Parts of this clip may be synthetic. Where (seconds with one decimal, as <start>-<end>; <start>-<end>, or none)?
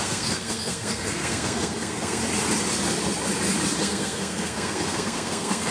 0.0-2.2; 3.8-5.7